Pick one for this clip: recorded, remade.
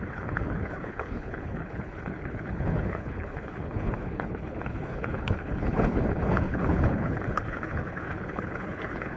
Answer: remade